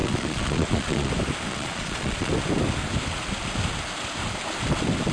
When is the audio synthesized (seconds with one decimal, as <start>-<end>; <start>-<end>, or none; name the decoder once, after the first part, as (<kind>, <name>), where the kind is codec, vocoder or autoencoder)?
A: 0.0-1.1 (vocoder, Vocos); 1.5-2.3